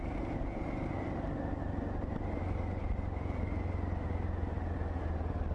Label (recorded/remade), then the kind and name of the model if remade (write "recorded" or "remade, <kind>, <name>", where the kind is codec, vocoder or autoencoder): recorded